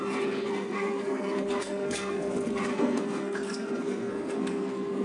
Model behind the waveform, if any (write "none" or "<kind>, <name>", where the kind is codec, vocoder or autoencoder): codec, SNAC